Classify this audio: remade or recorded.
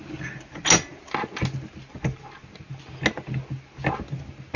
recorded